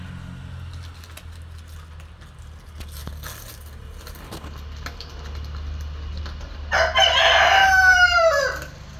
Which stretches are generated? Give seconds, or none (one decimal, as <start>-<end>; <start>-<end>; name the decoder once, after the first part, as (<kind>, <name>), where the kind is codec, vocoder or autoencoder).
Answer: 7.6-8.4 (autoencoder, DAC-VAE)